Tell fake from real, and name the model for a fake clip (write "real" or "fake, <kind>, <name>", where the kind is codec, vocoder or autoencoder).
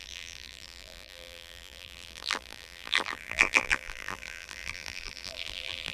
fake, vocoder, BigVGAN v2